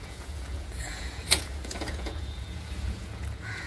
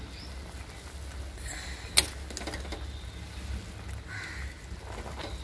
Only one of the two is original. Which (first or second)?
second